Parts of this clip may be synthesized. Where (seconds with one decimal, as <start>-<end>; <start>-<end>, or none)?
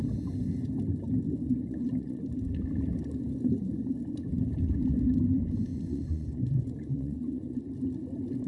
1.5-2.2; 5.7-7.6